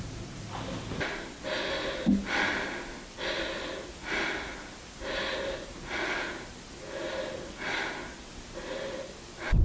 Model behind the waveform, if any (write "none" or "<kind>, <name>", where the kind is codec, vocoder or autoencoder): none